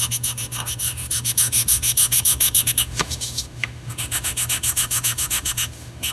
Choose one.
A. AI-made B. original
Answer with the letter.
A